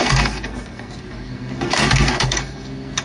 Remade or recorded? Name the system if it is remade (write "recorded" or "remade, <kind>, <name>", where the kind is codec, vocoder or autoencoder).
remade, codec, SNAC